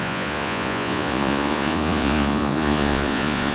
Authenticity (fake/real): fake